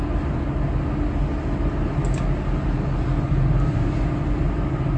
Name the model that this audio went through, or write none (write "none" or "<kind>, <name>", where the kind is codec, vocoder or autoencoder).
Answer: none